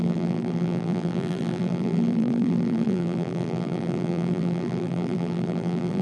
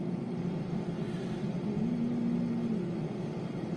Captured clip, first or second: second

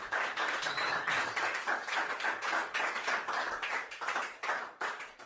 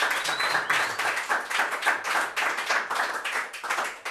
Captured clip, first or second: second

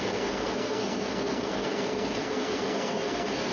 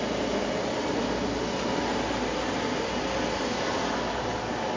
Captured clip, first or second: second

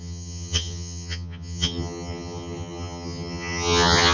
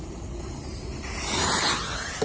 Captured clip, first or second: second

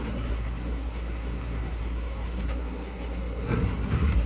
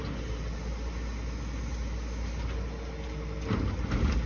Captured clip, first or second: second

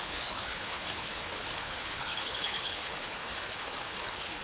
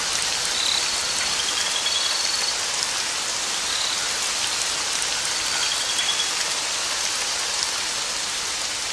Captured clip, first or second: second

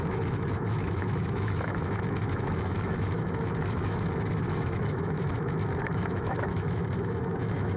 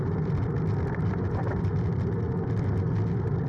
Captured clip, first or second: second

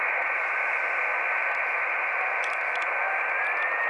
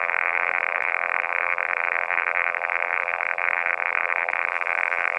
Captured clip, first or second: first